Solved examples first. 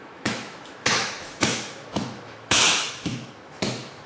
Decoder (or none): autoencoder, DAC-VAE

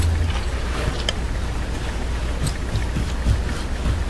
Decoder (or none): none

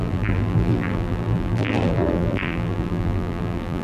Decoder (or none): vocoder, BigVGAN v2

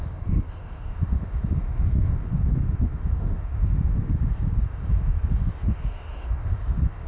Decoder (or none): autoencoder, DAC-VAE